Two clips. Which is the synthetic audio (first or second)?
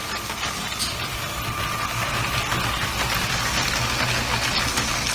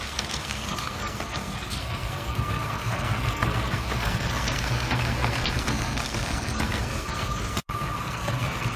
second